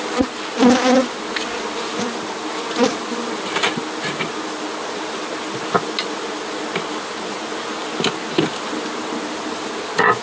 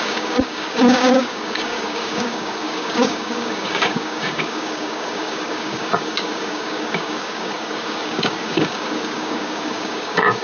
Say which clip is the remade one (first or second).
second